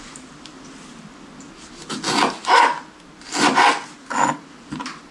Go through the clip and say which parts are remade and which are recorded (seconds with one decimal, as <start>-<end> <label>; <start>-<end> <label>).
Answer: 0.0-5.1 recorded